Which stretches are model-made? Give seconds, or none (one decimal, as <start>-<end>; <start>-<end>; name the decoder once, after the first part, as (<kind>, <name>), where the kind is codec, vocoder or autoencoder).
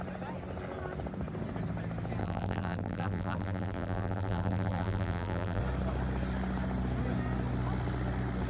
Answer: 2.2-5.6 (vocoder, BigVGAN v2)